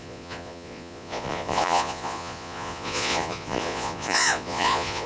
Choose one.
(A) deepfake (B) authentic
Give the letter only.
A